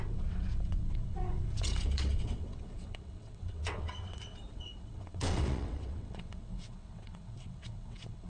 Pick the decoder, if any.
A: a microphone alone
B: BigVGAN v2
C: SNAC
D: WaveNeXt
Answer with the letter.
D